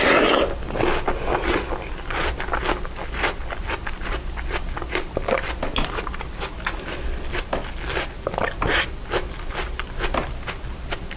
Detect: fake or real real